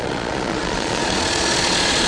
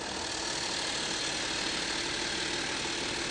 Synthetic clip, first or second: first